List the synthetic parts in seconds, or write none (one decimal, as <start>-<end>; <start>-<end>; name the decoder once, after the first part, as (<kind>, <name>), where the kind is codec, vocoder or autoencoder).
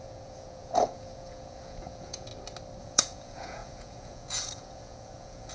0.0-2.3 (vocoder, Vocos); 2.8-5.5